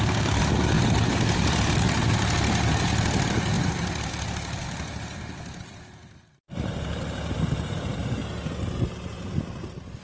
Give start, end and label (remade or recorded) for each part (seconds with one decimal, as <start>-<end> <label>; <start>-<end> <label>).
0.0-8.0 remade; 8.0-10.0 recorded

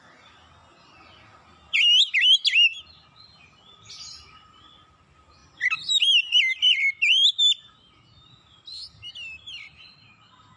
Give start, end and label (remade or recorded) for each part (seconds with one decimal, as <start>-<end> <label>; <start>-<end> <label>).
0.0-10.6 recorded

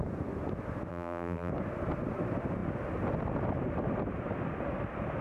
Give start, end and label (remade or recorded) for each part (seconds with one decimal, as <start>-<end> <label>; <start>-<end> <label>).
0.0-0.9 recorded; 0.9-1.5 remade; 1.5-5.2 recorded

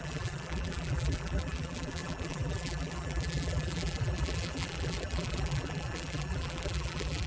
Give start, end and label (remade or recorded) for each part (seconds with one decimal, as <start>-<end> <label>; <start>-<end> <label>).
0.0-7.3 remade

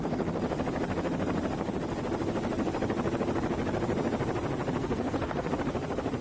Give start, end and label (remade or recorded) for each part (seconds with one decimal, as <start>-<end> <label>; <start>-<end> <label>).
0.0-4.8 recorded; 4.8-5.5 remade; 5.5-6.2 recorded

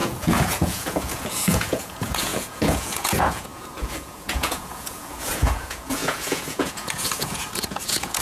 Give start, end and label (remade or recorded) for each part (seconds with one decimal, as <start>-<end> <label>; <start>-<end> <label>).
0.0-8.2 remade

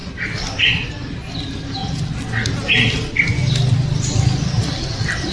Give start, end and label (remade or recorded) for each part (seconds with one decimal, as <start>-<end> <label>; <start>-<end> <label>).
0.0-5.3 recorded